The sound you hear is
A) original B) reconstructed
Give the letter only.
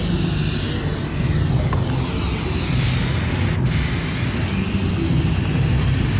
A